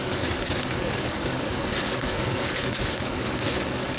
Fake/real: fake